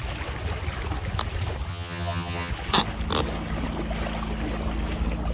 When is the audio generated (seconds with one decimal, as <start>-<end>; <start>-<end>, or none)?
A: 1.7-2.5

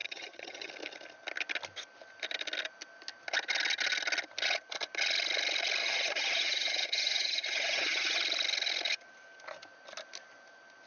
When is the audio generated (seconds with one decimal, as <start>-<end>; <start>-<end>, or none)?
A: 0.0-0.7; 5.8-8.2

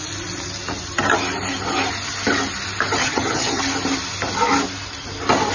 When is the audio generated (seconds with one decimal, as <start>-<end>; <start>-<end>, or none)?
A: 3.0-3.6